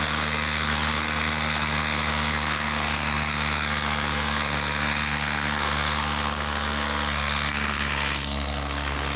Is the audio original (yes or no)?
no